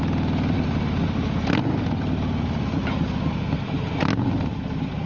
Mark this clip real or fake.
fake